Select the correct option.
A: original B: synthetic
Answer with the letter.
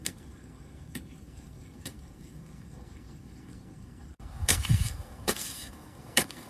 B